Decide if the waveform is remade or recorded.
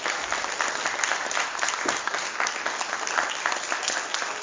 recorded